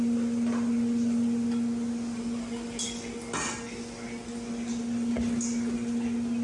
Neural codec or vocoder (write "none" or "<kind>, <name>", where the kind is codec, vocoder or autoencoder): none